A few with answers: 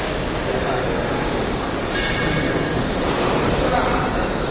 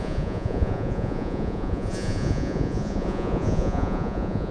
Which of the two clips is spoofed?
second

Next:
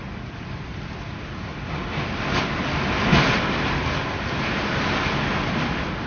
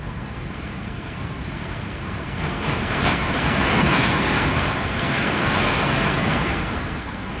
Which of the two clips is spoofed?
second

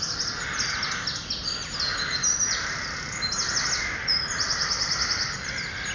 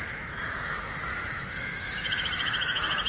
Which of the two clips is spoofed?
second